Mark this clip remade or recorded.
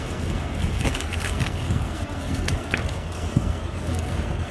remade